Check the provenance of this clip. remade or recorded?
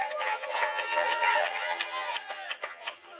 remade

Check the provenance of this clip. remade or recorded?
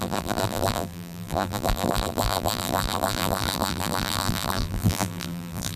remade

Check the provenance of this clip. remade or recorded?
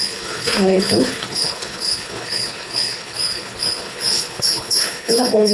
remade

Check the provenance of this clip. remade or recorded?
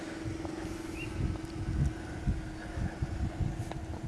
recorded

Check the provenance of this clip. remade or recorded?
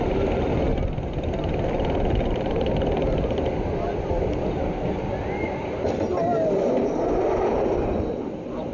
recorded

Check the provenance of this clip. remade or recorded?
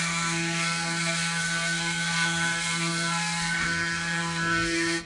remade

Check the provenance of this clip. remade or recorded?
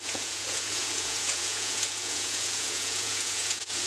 remade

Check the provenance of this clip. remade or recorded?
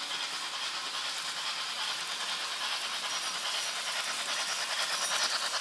recorded